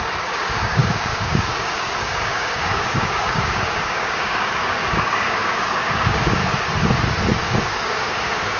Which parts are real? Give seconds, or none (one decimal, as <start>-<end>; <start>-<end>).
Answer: 6.4-7.4